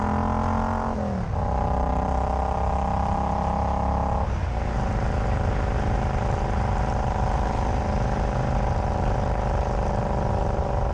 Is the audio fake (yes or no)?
no